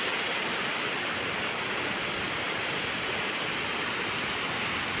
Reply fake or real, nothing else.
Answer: real